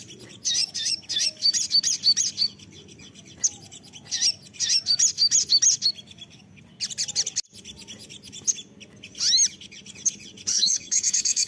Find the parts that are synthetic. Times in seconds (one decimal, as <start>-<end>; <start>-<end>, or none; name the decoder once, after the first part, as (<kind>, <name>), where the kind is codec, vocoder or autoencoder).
10.5-11.5 (codec, SNAC)